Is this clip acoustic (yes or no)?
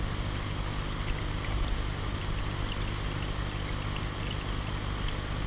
yes